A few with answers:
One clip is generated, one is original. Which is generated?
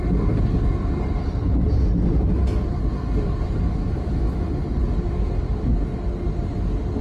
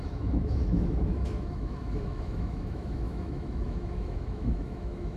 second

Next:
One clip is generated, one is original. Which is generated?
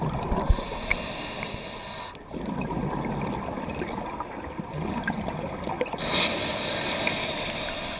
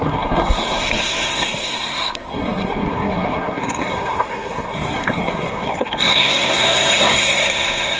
second